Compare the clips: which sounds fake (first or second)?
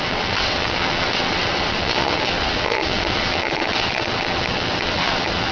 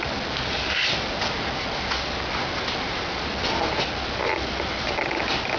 first